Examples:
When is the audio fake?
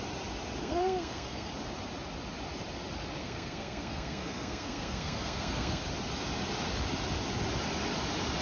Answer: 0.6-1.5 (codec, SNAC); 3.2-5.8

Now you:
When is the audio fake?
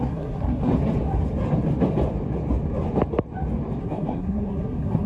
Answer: 0.0-0.7 (codec, SNAC); 3.8-5.1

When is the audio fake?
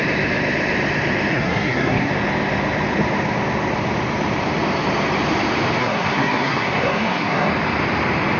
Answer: 1.3-2.1 (codec, SNAC); 5.8-7.5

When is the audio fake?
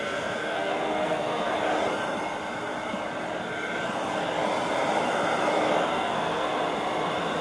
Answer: 0.0-1.5 (codec, SNAC); 5.9-6.5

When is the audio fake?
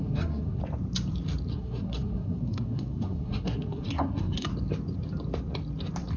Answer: 0.0-0.6 (codec, SNAC); 1.5-4.5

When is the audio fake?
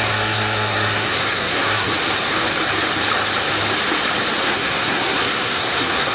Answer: 0.0-1.9 (codec, SNAC); 4.4-6.1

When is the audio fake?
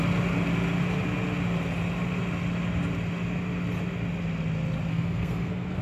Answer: 4.9-5.8 (codec, SNAC)